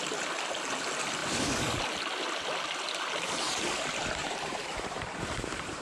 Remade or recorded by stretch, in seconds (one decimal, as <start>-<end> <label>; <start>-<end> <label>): 0.0-4.2 recorded; 4.2-5.8 remade